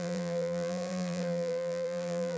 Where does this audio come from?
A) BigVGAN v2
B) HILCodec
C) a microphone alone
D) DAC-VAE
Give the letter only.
A